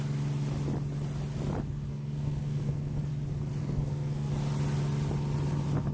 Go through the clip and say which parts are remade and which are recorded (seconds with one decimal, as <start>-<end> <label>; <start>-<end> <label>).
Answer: 0.0-1.9 recorded; 1.9-3.1 remade; 3.1-3.6 recorded; 3.6-4.3 remade; 4.3-5.9 recorded